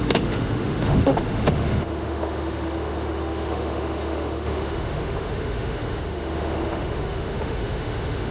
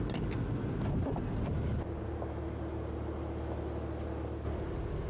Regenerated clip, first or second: first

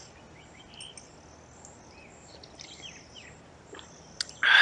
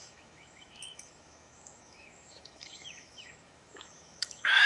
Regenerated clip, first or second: second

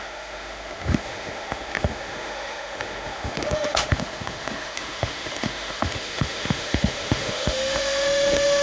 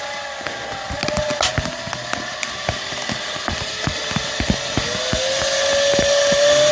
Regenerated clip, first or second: first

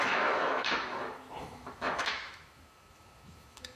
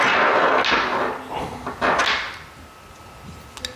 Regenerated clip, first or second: first